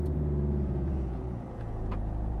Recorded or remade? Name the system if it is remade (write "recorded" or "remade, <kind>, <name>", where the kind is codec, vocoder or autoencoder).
remade, vocoder, Vocos